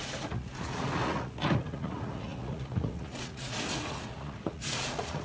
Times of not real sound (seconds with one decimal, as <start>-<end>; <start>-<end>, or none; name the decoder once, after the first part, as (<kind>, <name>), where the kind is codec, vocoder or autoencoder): 0.0-5.2 (vocoder, Vocos)